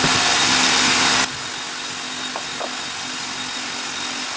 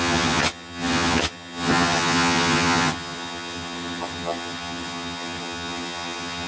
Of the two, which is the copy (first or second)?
second